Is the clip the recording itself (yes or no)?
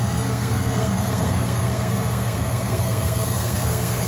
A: no